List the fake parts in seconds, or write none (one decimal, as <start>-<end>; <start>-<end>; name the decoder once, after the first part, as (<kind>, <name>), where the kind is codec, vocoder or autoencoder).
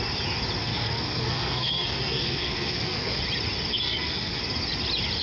0.6-3.2 (codec, SNAC); 3.7-4.4